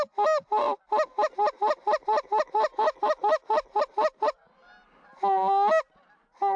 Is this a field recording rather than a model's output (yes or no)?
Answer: yes